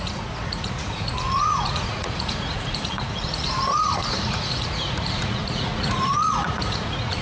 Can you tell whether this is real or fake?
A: fake